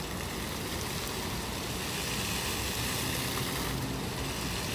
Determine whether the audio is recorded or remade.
recorded